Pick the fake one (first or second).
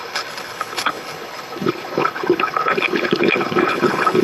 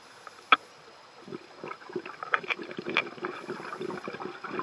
first